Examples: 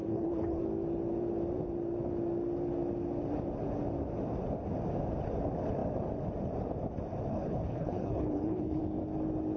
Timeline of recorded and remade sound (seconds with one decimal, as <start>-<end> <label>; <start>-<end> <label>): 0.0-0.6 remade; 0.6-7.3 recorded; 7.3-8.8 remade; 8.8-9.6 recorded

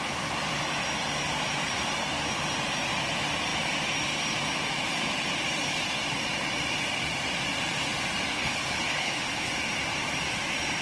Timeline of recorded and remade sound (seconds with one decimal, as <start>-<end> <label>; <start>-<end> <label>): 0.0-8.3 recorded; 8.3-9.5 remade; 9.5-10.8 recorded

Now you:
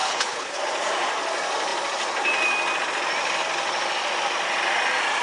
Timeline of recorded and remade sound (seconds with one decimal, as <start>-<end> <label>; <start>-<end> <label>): 0.0-0.6 remade; 0.6-5.2 recorded